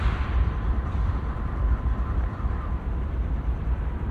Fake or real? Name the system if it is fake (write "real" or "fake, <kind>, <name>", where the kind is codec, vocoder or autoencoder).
fake, vocoder, BigVGAN v2